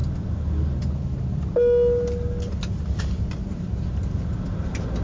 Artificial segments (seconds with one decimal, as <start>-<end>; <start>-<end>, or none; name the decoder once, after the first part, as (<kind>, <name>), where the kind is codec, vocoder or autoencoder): 3.4-4.1 (vocoder, BigVGAN v2)